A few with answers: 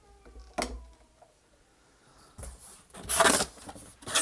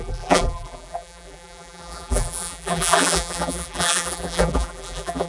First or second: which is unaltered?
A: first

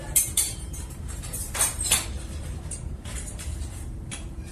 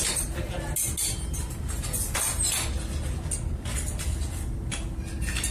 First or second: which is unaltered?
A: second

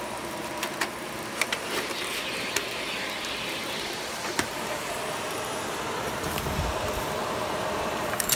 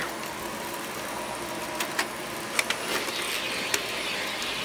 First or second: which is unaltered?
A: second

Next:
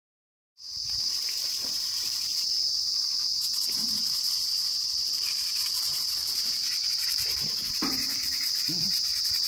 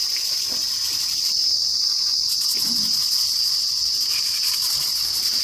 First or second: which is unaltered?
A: second